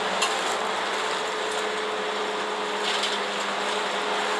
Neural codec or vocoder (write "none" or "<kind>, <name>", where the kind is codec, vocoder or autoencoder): none